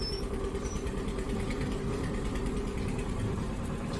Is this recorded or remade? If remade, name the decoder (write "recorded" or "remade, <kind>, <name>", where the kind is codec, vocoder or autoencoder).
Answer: remade, vocoder, BigVGAN v2